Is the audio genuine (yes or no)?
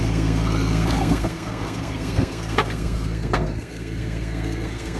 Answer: no